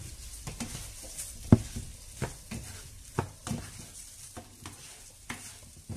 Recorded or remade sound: recorded